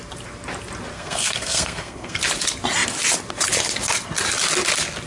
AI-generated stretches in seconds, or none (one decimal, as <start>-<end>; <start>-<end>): 0.9-2.2